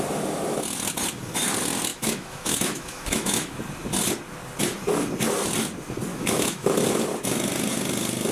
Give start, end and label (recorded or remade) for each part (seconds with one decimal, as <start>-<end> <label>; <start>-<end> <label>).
0.0-1.9 recorded; 1.9-3.6 remade; 3.6-6.1 recorded; 6.1-6.7 remade; 6.7-8.3 recorded